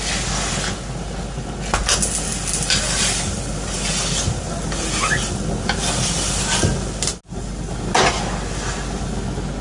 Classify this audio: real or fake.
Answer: real